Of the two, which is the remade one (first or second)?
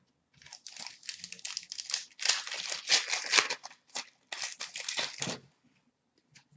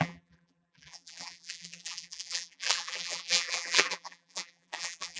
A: second